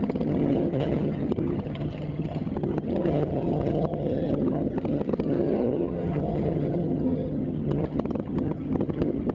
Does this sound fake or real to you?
fake